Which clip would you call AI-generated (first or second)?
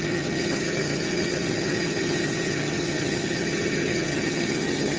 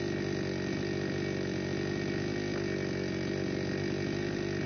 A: first